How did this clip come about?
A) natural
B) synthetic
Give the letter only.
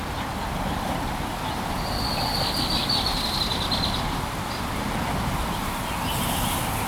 A